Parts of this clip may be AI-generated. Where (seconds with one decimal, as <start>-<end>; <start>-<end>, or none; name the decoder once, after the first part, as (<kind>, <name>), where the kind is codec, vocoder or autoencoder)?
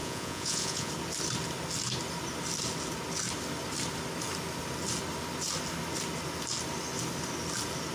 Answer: 0.0-0.9 (vocoder, Vocos)